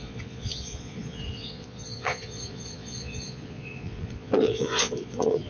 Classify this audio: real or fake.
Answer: fake